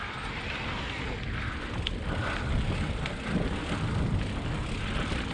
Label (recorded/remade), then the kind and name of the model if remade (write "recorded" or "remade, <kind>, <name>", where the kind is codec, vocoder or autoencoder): recorded